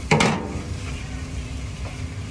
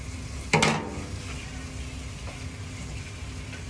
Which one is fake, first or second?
first